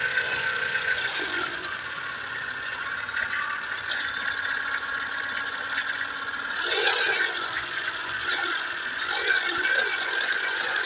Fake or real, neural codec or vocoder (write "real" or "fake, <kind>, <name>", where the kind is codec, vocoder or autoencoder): fake, vocoder, Vocos